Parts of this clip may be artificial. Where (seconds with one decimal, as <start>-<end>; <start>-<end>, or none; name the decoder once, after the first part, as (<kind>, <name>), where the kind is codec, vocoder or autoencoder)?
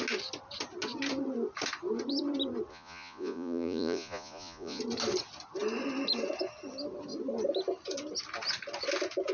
2.7-4.8 (vocoder, Vocos)